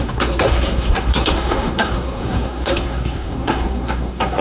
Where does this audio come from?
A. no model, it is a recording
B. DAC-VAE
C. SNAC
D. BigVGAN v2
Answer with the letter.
C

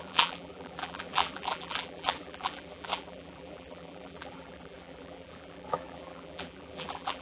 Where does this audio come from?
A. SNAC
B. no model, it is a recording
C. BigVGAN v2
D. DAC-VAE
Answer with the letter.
C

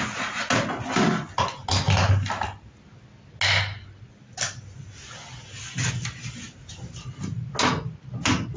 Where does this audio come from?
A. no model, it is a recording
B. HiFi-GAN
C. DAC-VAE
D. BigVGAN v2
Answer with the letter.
A